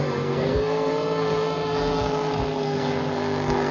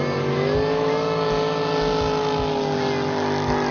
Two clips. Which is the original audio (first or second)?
second